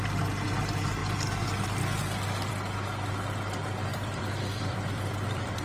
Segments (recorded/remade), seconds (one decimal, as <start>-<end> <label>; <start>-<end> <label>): 0.0-3.9 recorded; 3.9-5.6 remade